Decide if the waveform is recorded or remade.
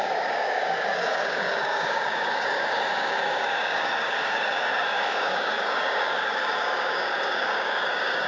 remade